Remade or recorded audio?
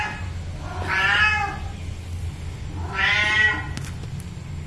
recorded